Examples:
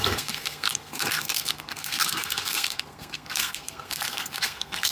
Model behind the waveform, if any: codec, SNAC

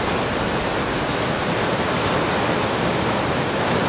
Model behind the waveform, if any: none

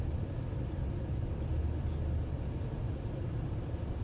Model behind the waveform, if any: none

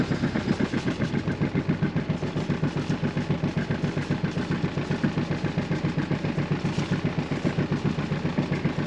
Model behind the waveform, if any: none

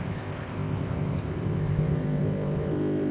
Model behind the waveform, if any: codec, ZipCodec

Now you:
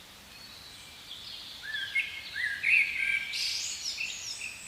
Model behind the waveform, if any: none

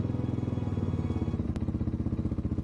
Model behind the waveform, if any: none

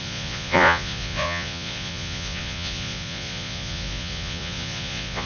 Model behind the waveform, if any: vocoder, Vocos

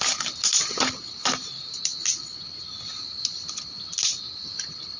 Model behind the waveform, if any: none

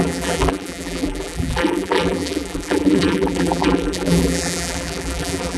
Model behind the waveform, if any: vocoder, BigVGAN v2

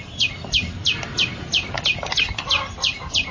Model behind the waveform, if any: vocoder, BigVGAN v2